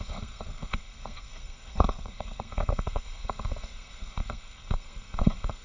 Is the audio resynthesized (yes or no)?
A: yes